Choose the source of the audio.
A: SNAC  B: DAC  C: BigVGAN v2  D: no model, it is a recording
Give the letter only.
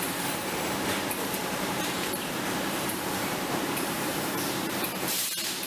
C